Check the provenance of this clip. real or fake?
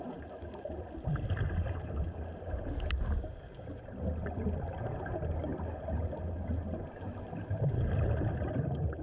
real